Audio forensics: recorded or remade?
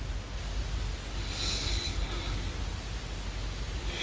recorded